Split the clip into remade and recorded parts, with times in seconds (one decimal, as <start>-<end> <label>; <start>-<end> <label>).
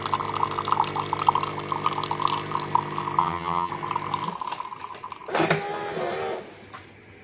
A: 0.0-3.2 recorded; 3.2-3.7 remade; 3.7-7.2 recorded